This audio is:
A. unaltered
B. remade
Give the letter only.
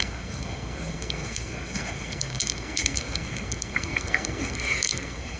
B